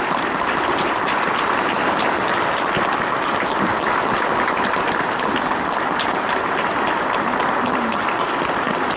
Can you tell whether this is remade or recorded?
recorded